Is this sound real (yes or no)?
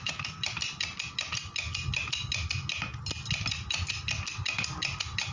yes